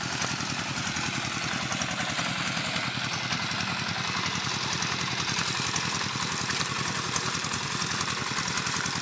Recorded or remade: recorded